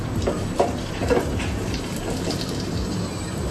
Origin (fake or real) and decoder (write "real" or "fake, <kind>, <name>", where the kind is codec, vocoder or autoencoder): fake, vocoder, BigVGAN v2